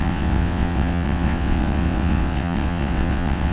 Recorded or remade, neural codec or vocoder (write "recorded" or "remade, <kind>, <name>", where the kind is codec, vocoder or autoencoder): remade, vocoder, WaveNeXt